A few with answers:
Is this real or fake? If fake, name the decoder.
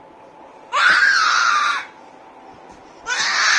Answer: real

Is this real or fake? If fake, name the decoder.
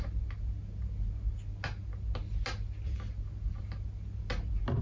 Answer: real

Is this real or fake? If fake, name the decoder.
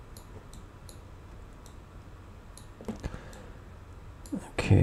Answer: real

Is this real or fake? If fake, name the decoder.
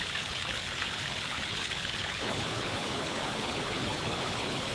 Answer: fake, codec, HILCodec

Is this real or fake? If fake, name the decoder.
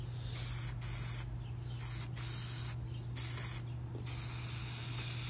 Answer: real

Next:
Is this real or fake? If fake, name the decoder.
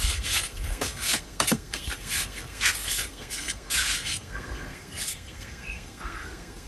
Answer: fake, codec, SNAC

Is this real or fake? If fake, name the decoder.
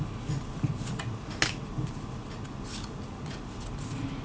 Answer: real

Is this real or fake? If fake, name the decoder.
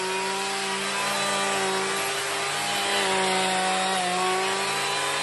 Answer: real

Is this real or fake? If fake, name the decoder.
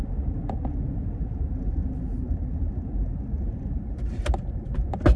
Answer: real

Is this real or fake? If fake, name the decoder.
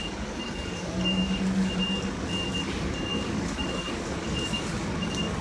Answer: fake, codec, DAC